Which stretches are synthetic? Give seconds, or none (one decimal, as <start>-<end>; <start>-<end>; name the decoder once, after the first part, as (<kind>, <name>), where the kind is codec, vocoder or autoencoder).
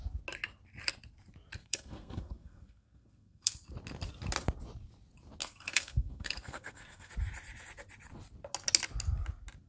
1.6-3.7 (codec, SNAC); 5.4-7.1